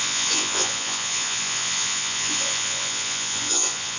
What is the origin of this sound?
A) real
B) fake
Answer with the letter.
B